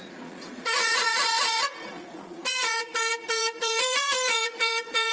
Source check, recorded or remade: remade